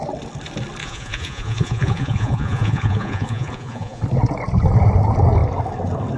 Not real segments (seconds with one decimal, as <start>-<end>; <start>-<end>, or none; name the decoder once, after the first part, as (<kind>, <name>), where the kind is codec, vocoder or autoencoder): 0.8-4.0 (vocoder, Vocos)